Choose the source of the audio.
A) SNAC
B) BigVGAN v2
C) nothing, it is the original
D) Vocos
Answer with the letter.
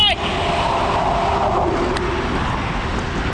C